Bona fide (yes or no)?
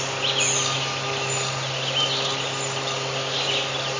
yes